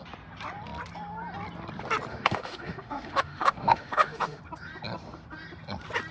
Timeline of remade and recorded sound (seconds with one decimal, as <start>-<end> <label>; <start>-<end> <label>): 0.0-2.1 recorded; 2.1-4.4 remade; 4.4-6.1 recorded